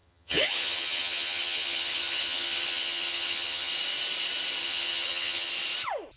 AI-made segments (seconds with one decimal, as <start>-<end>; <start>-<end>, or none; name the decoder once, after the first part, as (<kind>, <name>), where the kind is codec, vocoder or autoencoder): 0.0-3.7 (vocoder, HiFi-GAN); 4.6-5.5